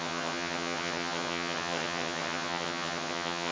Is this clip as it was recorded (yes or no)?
no